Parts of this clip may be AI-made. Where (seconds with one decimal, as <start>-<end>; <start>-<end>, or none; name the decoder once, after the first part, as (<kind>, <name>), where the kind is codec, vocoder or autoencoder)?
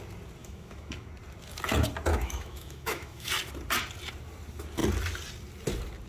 0.4-1.1 (autoencoder, DAC-VAE); 2.1-3.3